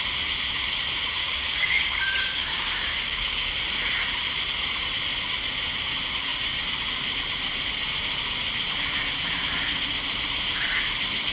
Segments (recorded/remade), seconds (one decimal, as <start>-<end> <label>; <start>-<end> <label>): 0.0-1.2 recorded; 1.2-3.5 remade; 3.5-11.3 recorded